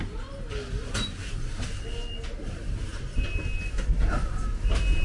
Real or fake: real